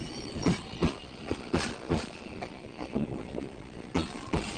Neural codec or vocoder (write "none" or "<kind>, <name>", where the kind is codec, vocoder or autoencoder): vocoder, Vocos